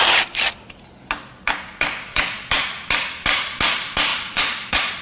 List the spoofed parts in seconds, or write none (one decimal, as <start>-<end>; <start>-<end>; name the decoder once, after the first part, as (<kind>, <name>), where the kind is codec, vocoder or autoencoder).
2.1-2.6 (vocoder, Vocos); 4.1-5.0